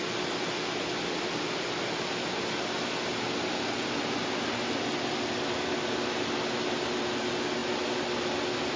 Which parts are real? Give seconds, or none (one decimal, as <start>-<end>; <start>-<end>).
0.0-8.8